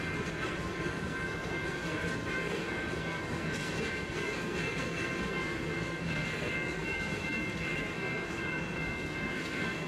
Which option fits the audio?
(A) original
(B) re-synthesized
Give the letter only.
B